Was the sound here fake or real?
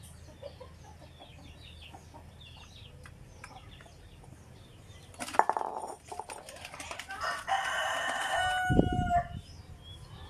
real